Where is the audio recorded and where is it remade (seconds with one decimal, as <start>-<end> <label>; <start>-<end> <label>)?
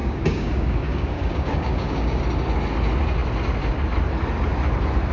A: 0.0-2.2 remade; 2.2-5.1 recorded